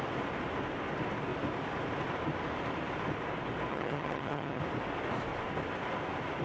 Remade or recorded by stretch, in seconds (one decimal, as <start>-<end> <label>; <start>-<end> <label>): 0.0-3.7 recorded; 3.7-4.6 remade; 4.6-6.4 recorded